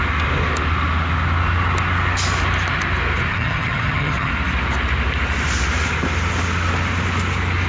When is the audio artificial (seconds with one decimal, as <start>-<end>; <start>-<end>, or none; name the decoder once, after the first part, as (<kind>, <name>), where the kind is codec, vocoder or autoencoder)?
3.3-4.3 (vocoder, HiFi-GAN)